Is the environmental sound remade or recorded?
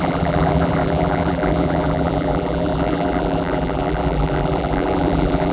remade